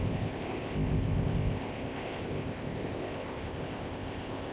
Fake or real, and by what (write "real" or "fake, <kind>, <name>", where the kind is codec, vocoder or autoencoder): fake, codec, ZipCodec